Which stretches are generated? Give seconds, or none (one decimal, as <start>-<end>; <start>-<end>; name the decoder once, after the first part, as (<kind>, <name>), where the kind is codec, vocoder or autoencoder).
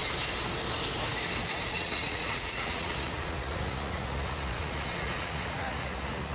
1.7-6.3 (vocoder, Vocos)